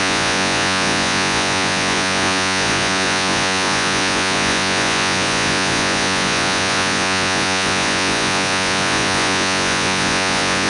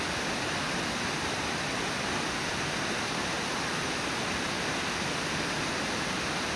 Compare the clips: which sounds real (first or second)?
second